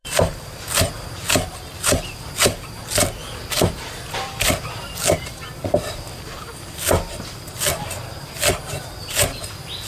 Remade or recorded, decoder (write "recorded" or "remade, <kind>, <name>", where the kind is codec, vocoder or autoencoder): remade, vocoder, BigVGAN v2